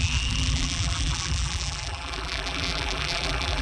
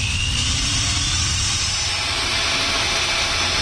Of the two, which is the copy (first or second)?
first